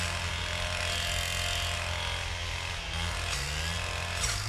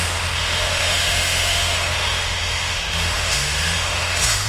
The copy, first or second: second